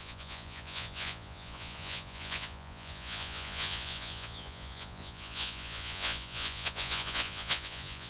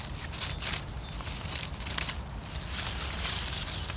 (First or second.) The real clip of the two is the second